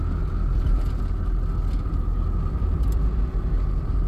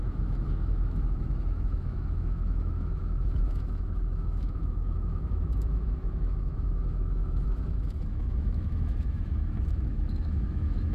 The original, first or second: first